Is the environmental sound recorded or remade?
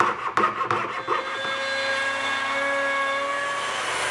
recorded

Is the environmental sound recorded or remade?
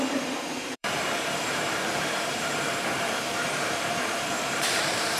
remade